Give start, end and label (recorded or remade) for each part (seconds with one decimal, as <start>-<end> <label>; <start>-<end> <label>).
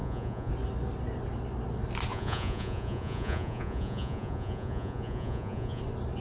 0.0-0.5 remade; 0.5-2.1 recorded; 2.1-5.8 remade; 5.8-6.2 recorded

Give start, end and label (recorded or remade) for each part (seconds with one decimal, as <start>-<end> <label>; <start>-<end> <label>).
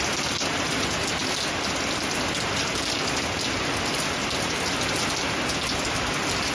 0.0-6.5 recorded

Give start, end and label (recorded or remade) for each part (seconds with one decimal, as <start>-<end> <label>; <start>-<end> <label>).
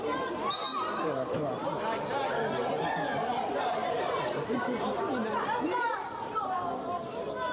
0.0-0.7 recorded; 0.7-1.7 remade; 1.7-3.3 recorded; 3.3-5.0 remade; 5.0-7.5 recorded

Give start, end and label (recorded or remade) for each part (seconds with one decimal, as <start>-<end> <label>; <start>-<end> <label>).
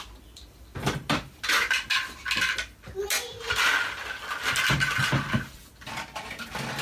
0.0-6.8 recorded